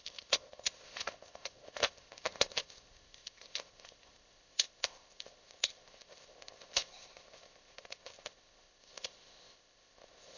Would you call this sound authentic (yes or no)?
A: no